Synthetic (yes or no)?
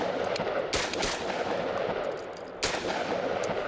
no